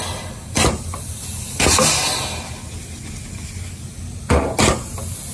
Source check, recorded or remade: recorded